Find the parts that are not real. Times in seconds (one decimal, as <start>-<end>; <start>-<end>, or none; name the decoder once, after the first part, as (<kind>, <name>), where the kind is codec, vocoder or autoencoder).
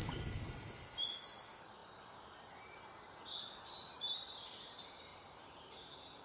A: 0.0-0.5 (vocoder, BigVGAN v2); 1.8-4.1; 5.1-6.2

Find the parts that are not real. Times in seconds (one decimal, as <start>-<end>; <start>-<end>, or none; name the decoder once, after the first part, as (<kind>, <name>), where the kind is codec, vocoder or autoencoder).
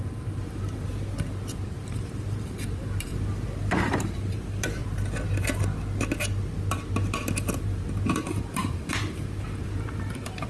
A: 0.0-0.9 (vocoder, BigVGAN v2); 2.2-3.1; 3.7-4.8; 8.1-10.5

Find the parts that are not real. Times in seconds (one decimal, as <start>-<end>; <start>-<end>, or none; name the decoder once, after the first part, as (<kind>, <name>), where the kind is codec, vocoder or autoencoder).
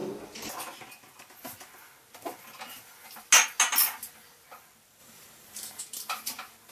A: 5.0-5.8 (vocoder, BigVGAN v2)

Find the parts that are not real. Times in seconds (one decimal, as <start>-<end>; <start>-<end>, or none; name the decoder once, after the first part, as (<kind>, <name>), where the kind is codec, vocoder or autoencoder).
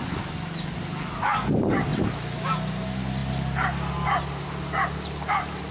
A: none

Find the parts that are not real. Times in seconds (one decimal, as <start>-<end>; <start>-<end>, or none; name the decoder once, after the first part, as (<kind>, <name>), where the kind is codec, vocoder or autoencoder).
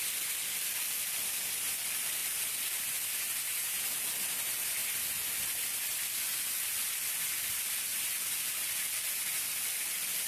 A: none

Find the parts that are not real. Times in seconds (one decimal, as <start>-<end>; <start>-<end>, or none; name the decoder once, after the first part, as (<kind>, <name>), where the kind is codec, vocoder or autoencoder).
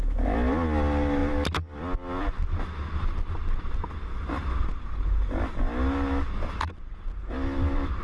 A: none